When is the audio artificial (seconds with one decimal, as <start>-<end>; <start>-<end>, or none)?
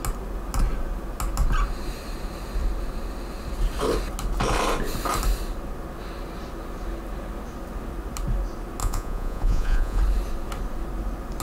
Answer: 8.8-10.0